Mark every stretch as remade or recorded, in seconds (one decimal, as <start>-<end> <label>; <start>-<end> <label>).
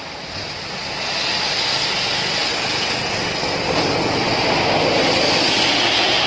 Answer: 0.0-6.3 recorded